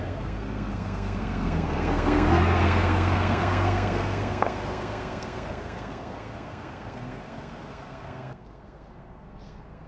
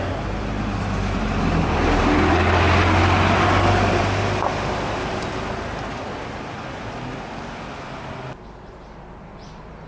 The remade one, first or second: first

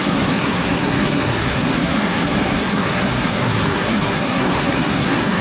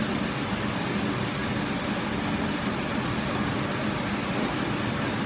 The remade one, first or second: first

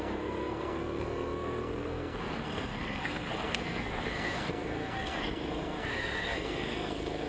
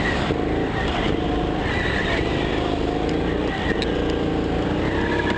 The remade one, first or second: first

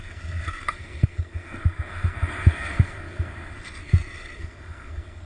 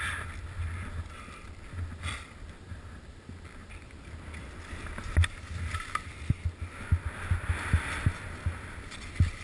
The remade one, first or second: first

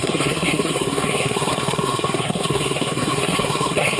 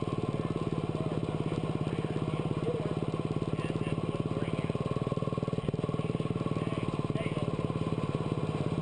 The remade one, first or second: first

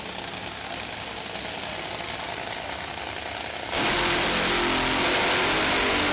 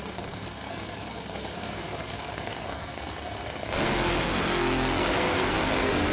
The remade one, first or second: second